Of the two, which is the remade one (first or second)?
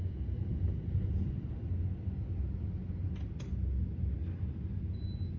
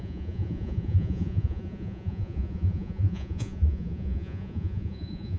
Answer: second